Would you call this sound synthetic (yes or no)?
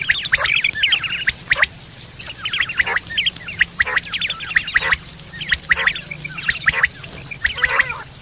no